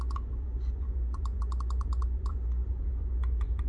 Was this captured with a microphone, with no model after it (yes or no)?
no